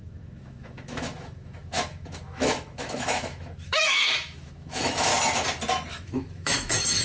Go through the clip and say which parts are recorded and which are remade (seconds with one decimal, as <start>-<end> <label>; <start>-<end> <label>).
0.0-5.1 remade; 5.1-5.9 recorded; 5.9-7.0 remade